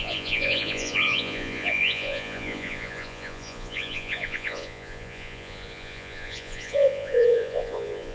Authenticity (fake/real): fake